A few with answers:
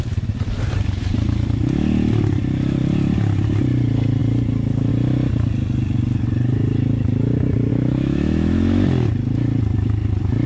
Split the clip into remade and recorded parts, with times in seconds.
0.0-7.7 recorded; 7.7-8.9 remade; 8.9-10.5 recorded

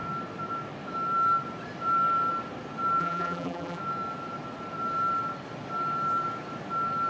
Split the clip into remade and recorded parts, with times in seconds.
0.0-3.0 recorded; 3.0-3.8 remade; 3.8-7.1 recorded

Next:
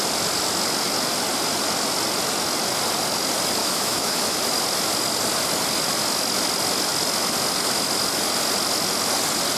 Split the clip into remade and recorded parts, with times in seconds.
0.0-3.6 recorded; 3.6-4.4 remade; 4.4-9.6 recorded

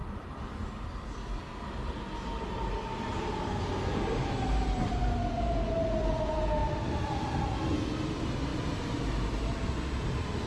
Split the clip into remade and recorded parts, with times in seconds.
0.0-0.5 remade; 0.5-6.6 recorded; 6.6-7.6 remade; 7.6-8.5 recorded; 8.5-9.7 remade; 9.7-10.5 recorded

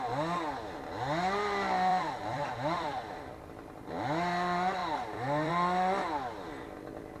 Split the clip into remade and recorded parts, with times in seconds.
0.0-1.9 recorded; 1.9-3.4 remade; 3.4-4.8 recorded; 4.8-5.5 remade; 5.5-7.2 recorded

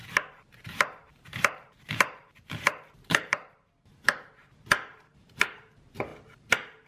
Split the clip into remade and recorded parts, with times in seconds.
0.0-1.1 recorded; 1.1-4.2 remade; 4.2-4.9 recorded; 4.9-5.5 remade; 5.5-6.1 recorded; 6.1-6.9 remade

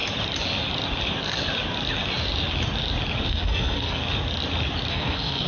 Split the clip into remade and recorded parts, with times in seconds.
0.0-3.3 recorded; 3.3-4.0 remade; 4.0-4.9 recorded; 4.9-5.5 remade